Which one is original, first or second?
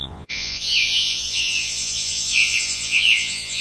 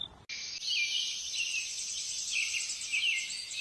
second